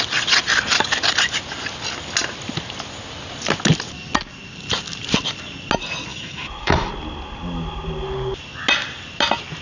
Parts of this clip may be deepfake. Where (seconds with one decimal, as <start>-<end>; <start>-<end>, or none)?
6.1-6.9